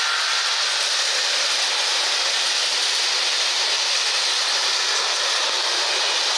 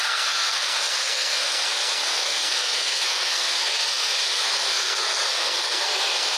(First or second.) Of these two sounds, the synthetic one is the second